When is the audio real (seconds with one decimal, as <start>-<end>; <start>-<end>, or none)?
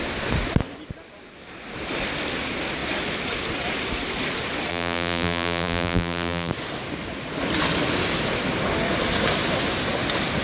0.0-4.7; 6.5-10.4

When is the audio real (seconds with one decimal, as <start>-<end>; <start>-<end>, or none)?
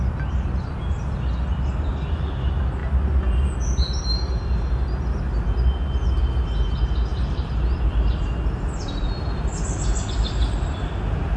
0.0-7.1; 11.0-11.4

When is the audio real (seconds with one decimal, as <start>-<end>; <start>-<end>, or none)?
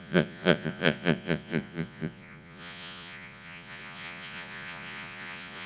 none